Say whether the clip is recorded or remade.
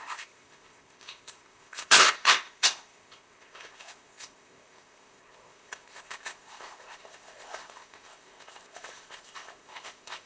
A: remade